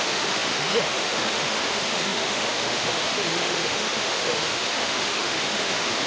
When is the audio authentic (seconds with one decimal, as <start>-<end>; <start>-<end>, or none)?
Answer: none